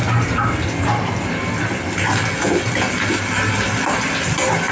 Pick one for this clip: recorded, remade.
recorded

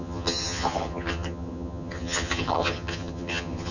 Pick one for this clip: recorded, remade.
remade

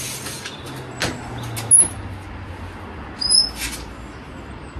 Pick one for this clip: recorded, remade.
recorded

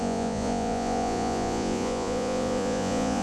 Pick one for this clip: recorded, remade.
remade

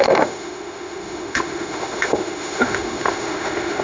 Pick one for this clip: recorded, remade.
remade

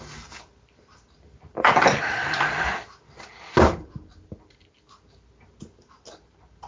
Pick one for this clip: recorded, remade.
recorded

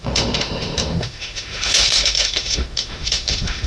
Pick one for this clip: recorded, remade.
remade